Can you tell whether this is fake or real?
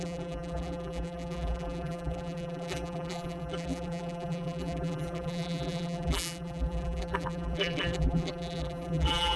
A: fake